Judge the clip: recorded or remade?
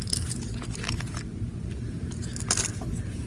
recorded